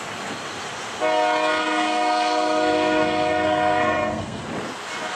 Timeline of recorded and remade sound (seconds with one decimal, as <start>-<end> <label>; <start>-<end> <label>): 0.0-1.6 recorded; 1.6-4.4 remade; 4.4-5.2 recorded